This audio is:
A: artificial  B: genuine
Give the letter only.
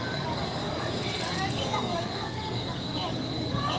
A